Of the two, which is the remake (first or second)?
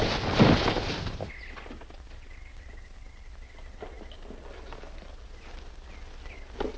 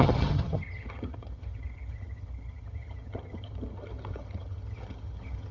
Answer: second